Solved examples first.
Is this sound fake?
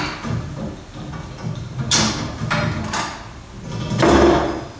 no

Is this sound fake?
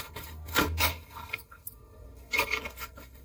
yes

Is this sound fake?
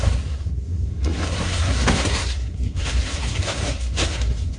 yes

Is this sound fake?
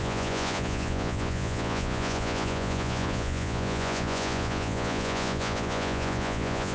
yes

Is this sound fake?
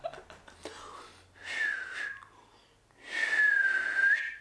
no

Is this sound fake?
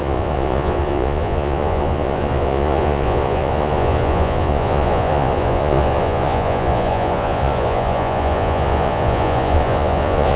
yes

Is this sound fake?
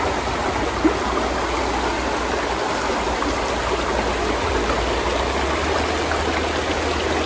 no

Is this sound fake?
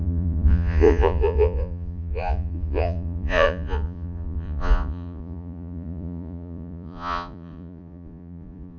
yes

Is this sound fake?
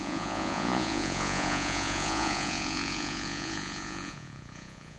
yes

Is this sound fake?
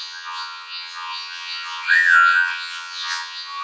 yes